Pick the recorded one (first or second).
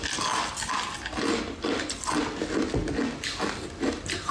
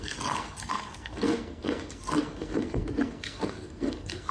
first